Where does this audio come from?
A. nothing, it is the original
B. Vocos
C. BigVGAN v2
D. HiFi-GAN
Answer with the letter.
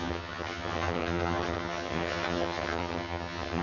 D